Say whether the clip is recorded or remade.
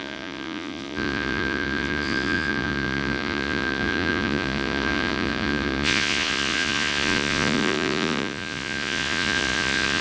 remade